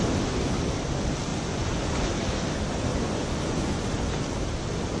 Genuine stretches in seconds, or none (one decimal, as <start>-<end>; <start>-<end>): 0.0-1.3; 2.1-2.9; 3.9-5.0